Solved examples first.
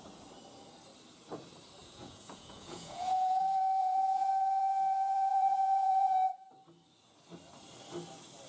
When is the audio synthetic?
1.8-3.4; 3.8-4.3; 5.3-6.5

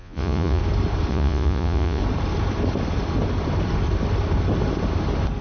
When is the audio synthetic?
0.0-0.6; 1.1-2.0

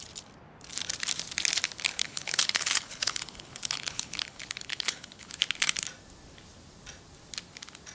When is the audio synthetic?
1.9-5.3

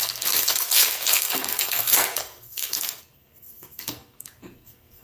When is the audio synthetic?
0.0-5.0

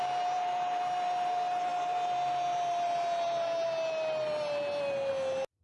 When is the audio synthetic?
none

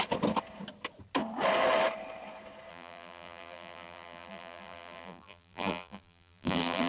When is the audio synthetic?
2.7-6.9

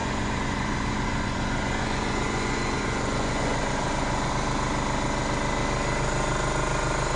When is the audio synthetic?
0.0-4.3